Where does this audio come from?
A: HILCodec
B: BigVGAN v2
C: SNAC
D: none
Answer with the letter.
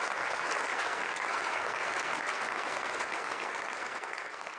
C